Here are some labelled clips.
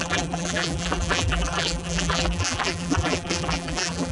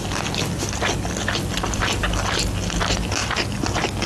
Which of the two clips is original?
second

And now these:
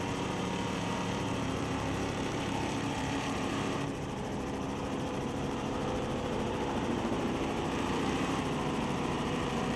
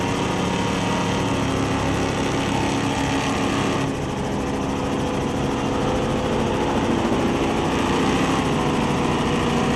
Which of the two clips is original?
second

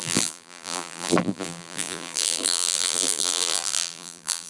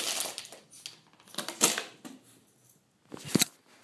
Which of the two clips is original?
second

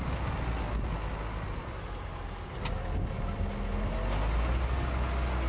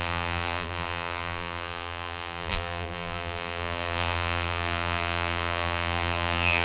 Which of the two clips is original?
first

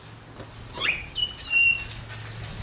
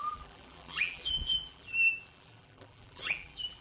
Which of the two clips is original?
first